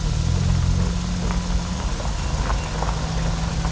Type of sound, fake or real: real